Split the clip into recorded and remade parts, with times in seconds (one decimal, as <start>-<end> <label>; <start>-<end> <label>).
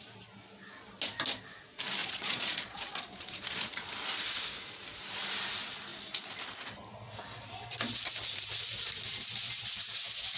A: 0.0-2.0 recorded; 2.0-3.9 remade; 3.9-10.4 recorded